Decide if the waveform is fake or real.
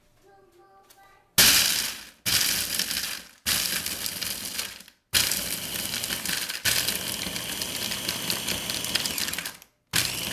real